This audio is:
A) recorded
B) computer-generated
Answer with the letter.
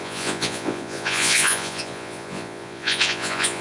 B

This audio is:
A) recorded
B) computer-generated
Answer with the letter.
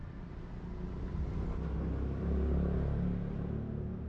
A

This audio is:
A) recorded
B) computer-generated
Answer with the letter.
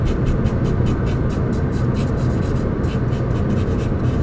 A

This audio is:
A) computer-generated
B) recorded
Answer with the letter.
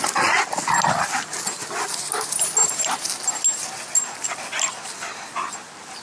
B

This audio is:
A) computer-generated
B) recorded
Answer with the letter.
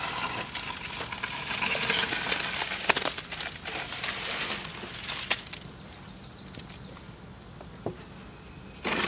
B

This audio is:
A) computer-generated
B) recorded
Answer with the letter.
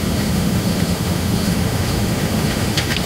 A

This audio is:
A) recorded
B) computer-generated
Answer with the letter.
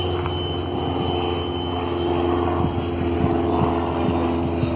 A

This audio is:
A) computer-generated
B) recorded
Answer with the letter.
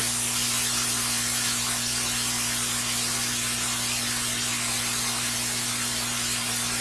B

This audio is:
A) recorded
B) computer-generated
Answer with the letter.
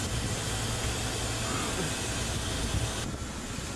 A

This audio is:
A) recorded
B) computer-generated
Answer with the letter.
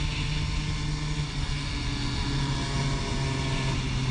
A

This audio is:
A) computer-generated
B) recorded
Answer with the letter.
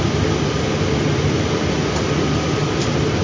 B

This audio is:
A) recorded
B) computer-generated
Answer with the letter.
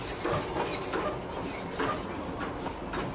A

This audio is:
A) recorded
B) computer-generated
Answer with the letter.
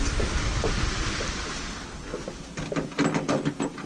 A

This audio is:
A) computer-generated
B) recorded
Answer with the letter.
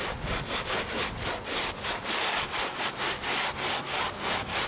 B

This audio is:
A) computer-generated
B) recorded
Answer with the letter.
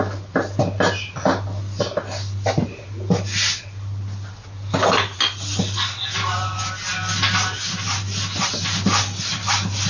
B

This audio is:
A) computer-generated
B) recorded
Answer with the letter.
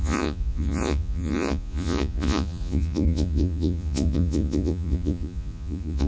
A